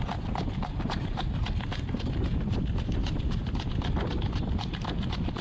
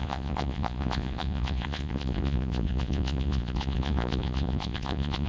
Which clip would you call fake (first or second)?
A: second